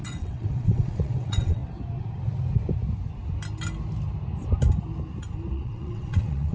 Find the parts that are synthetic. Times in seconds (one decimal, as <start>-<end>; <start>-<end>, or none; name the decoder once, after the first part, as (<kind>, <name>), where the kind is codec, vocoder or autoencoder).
0.0-1.6 (vocoder, WaveNeXt); 5.5-6.5